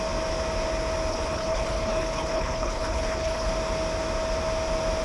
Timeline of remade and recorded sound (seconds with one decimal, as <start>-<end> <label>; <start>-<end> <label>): 0.0-1.1 recorded; 1.1-3.5 remade; 3.5-5.0 recorded